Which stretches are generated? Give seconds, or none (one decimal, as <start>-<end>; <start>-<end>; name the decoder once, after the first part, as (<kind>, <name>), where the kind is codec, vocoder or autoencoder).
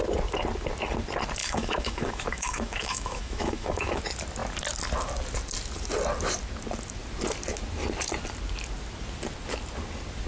1.4-4.0 (autoencoder, DAC-VAE)